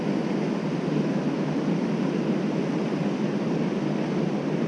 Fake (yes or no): no